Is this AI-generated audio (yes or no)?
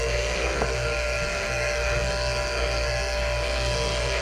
yes